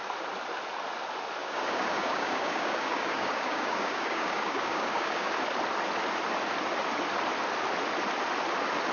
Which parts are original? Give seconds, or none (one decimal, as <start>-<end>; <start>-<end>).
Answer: 0.0-1.4; 5.3-8.9